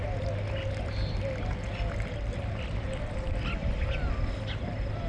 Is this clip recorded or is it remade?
recorded